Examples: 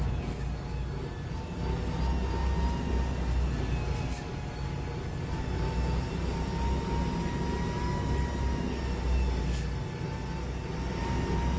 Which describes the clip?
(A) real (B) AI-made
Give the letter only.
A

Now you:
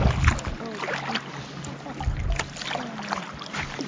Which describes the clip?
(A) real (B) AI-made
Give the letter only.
A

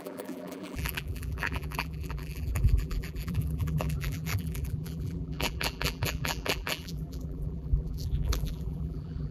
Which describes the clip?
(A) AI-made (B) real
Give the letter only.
A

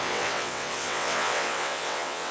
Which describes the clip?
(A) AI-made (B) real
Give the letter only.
A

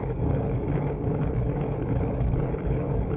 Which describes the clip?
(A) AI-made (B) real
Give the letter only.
A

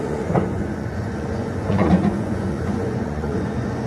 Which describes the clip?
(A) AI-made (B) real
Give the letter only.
A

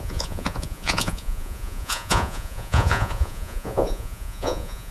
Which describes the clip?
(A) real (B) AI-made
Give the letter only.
B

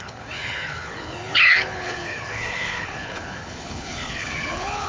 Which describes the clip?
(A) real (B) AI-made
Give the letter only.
B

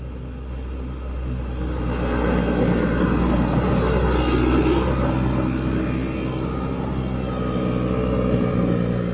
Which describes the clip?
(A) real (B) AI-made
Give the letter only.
A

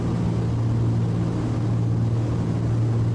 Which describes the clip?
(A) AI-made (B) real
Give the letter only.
B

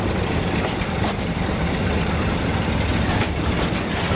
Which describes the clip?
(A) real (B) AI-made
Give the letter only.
A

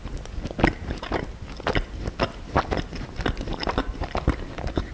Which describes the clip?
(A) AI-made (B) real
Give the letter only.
B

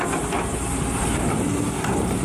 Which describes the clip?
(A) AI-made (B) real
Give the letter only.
B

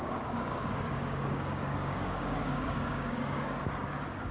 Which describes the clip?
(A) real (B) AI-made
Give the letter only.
B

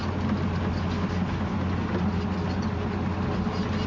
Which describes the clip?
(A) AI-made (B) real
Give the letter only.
B